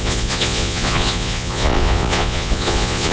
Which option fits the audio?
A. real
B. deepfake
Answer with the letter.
B